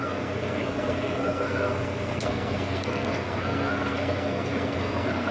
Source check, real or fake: fake